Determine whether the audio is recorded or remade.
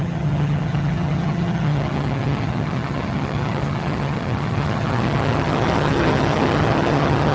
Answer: remade